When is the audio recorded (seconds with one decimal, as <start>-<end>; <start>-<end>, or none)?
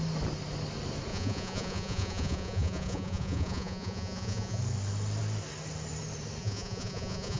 0.0-1.1; 4.6-6.4